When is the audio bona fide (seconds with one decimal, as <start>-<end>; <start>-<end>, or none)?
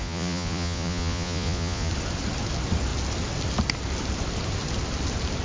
1.9-5.4